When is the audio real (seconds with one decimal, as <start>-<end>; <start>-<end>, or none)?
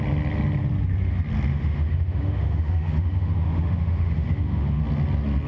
0.0-1.5; 4.8-5.5